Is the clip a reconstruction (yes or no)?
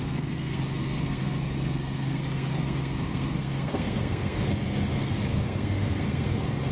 yes